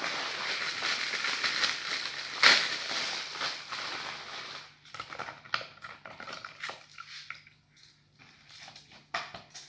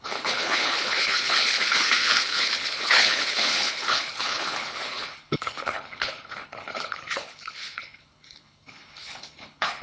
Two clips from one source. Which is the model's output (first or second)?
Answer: second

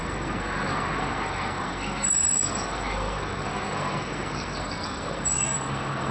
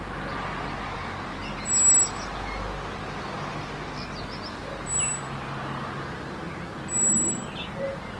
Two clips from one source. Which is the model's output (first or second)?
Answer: first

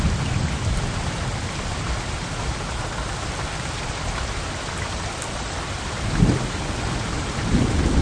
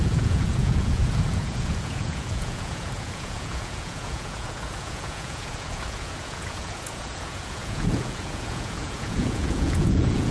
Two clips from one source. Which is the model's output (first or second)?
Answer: second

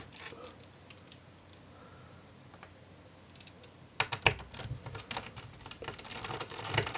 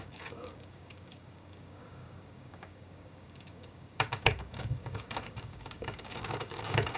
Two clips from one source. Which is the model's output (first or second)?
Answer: second